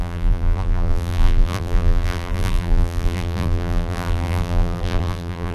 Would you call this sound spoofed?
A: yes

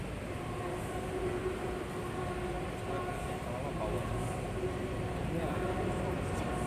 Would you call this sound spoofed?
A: no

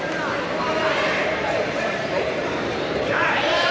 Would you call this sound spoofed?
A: yes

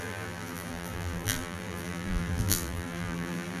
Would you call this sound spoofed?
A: yes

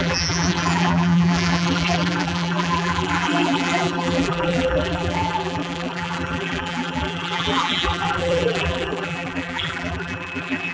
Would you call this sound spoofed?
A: yes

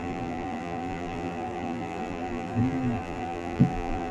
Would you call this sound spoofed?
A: yes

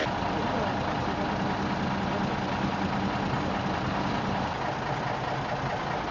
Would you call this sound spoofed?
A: no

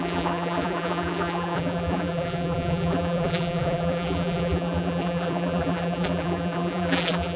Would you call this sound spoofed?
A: yes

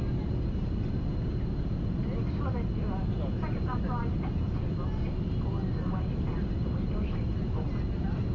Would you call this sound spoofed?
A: no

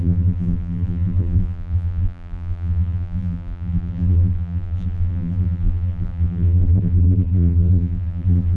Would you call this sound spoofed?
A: yes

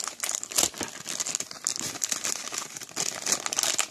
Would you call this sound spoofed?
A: no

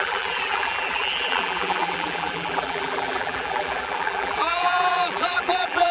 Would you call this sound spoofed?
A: yes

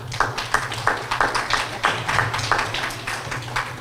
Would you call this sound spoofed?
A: no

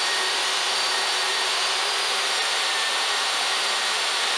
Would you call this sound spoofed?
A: yes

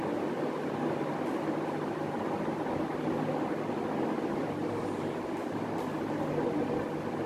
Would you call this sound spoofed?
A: no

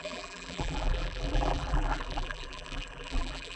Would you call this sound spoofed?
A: yes